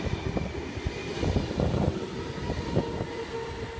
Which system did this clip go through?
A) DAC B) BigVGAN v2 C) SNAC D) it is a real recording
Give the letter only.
D